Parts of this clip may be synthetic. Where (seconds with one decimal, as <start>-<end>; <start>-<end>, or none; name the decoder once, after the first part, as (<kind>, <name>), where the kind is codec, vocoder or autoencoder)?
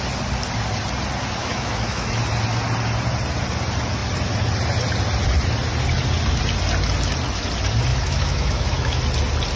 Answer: 1.4-2.2 (autoencoder, DAC-VAE); 7.9-9.0